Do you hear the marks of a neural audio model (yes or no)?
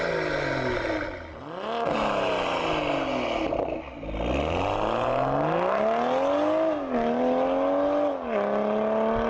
no